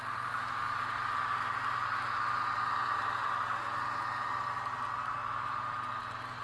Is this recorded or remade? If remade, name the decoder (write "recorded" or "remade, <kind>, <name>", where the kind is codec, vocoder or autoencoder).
recorded